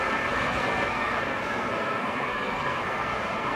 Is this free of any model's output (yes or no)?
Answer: no